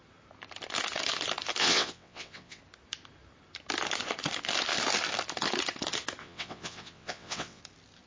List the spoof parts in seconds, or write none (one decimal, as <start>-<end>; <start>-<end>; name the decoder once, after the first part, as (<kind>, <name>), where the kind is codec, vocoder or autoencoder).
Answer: 1.6-2.6 (vocoder, WaveNeXt); 6.2-7.6